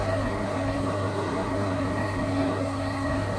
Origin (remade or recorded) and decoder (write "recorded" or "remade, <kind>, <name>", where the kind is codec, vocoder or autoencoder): remade, codec, SNAC